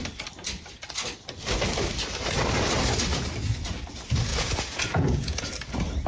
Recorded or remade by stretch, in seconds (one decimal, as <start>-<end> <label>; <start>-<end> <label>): 0.0-4.3 recorded; 4.3-5.5 remade; 5.5-6.1 recorded